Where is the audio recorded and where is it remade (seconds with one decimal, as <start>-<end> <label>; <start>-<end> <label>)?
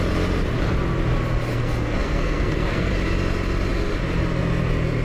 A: 0.0-1.5 recorded; 1.5-2.9 remade; 2.9-5.0 recorded